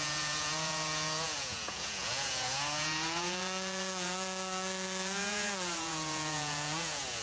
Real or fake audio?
fake